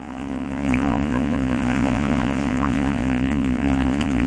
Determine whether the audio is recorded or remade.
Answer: remade